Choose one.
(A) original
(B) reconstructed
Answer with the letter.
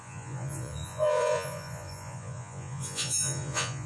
B